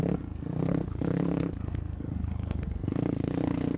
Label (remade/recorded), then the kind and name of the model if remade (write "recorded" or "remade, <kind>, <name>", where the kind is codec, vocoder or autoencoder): remade, codec, SNAC